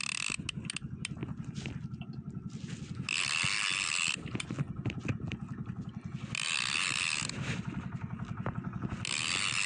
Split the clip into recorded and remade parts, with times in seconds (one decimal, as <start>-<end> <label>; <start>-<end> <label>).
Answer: 0.0-9.7 recorded